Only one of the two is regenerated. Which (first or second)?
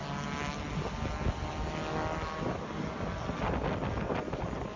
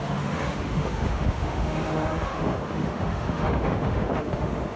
second